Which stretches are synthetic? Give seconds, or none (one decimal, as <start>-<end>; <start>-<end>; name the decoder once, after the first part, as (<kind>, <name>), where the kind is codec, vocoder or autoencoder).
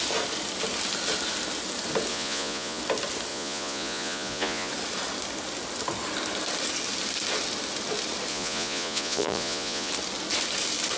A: 2.1-2.8 (vocoder, Vocos); 3.3-4.7; 8.3-9.9